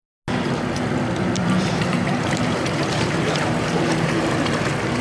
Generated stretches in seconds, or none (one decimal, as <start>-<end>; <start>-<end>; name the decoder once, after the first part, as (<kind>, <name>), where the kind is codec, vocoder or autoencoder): 1.4-4.4 (vocoder, BigVGAN v2)